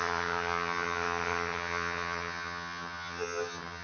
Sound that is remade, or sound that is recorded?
remade